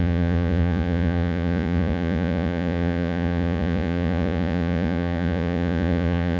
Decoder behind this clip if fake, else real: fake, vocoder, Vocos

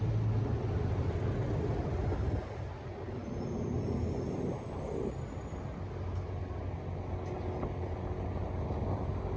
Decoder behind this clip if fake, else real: real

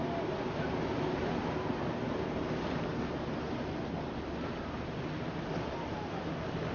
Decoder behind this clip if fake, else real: real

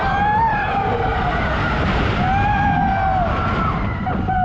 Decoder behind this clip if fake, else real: real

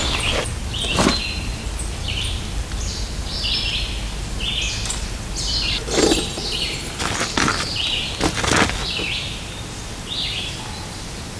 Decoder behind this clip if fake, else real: real